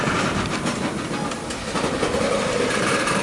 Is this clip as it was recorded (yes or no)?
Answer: yes